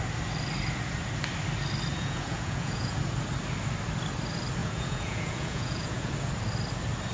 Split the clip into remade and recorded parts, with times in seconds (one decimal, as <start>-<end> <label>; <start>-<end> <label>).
0.0-2.0 recorded; 2.0-3.0 remade; 3.0-4.6 recorded; 4.6-6.1 remade; 6.1-7.1 recorded